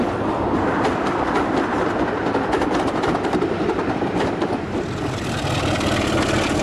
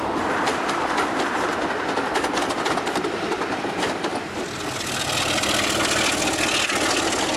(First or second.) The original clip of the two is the second